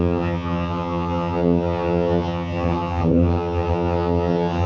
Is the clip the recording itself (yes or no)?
no